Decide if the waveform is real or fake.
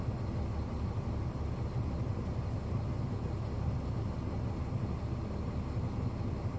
real